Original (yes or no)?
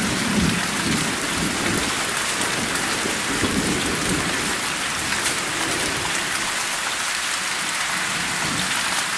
yes